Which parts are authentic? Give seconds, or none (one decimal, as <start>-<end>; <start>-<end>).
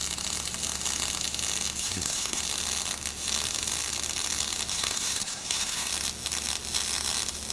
0.0-1.8; 2.4-4.7; 5.9-7.5